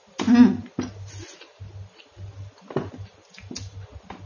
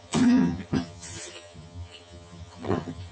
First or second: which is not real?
second